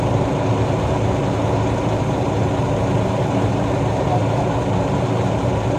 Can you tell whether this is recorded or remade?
remade